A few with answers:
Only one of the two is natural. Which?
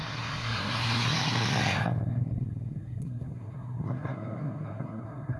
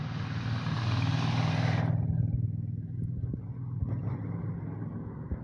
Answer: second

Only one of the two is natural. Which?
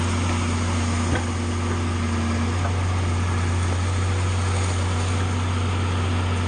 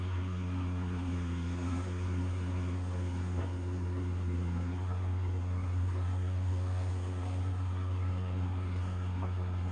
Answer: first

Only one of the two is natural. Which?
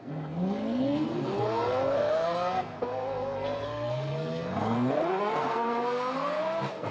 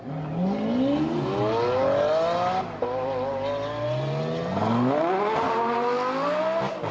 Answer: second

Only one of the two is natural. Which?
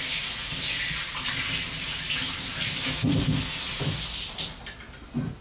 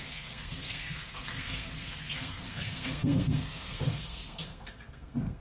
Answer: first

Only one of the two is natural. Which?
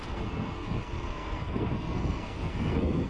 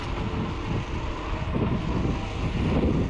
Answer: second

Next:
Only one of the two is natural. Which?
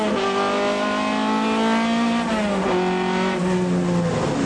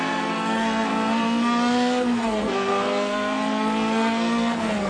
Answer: first